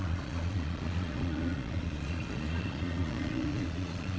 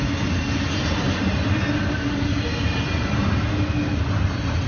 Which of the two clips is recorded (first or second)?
second